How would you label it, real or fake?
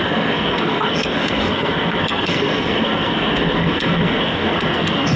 fake